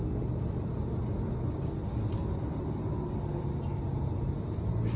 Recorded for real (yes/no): yes